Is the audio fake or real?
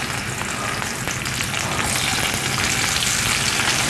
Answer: real